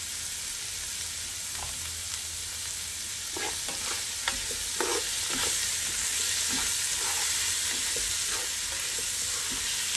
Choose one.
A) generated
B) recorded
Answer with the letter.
B